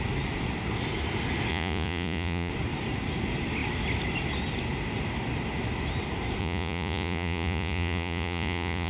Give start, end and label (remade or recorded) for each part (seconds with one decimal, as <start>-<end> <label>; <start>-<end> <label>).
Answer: 0.0-1.5 recorded; 1.5-2.5 remade; 2.5-6.4 recorded; 6.4-8.9 remade